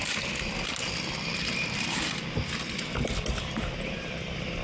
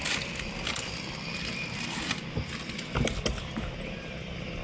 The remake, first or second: first